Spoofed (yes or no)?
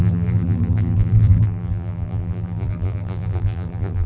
yes